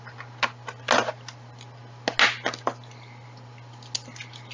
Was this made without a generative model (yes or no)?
yes